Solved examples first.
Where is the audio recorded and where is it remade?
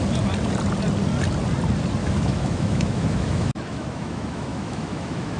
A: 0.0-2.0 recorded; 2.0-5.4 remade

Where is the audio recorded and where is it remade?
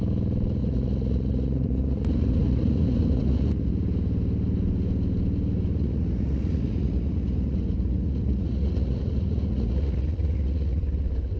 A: 0.0-0.6 recorded; 0.6-3.7 remade; 3.7-5.7 recorded; 5.7-10.8 remade; 10.8-11.4 recorded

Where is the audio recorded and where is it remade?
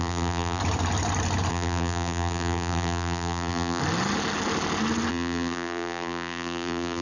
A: 0.0-0.6 remade; 0.6-1.5 recorded; 1.5-3.8 remade; 3.8-5.1 recorded; 5.1-7.0 remade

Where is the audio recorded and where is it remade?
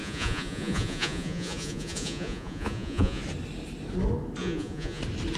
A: 0.0-3.2 remade; 3.2-4.4 recorded; 4.4-5.0 remade; 5.0-5.4 recorded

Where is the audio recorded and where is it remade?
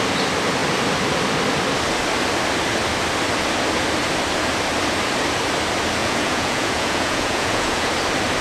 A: 0.0-6.0 recorded; 6.0-7.9 remade; 7.9-8.4 recorded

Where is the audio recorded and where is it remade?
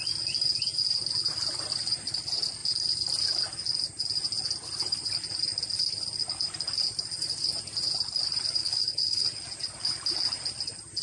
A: 0.0-8.6 recorded; 8.6-9.2 remade; 9.2-11.0 recorded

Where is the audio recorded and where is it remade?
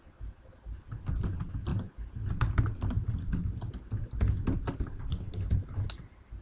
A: 0.0-6.4 recorded